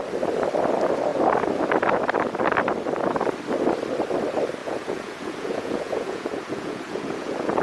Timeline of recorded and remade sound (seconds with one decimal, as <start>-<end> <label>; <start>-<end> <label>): 0.0-4.6 recorded; 4.6-7.6 remade